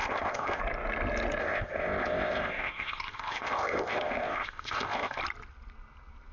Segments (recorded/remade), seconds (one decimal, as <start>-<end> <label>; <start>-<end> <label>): 0.0-0.6 remade; 0.6-1.4 recorded; 1.4-5.2 remade; 5.2-6.3 recorded